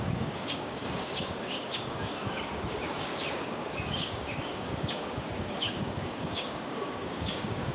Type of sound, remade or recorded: remade